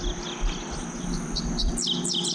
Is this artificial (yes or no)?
no